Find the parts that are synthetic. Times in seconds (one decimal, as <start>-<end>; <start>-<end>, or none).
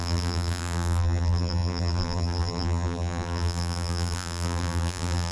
0.0-5.3